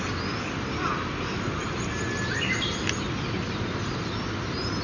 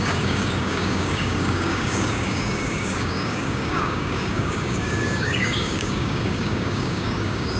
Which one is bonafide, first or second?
first